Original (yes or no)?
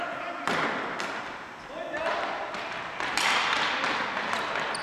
yes